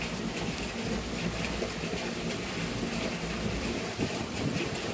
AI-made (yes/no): no